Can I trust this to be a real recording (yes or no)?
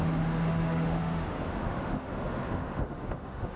no